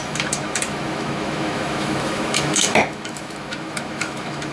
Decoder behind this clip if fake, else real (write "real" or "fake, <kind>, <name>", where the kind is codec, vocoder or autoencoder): fake, autoencoder, DAC-VAE